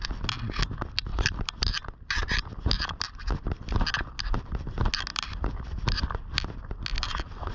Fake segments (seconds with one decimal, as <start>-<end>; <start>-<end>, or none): 1.1-1.7; 2.2-3.3; 5.1-6.4